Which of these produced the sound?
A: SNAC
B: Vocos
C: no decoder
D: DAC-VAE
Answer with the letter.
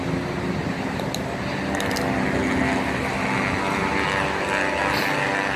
C